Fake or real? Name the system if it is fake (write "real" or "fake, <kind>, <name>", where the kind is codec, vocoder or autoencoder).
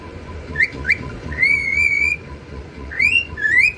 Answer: fake, vocoder, Vocos